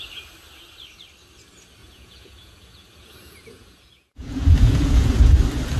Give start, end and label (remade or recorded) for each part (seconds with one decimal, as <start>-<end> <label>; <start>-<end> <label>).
0.0-1.8 recorded; 1.8-5.3 remade; 5.3-5.8 recorded